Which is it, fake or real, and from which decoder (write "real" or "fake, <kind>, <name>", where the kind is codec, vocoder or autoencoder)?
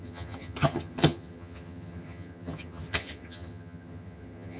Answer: fake, vocoder, HiFi-GAN